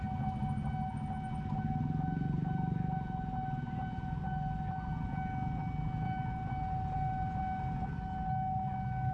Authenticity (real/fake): real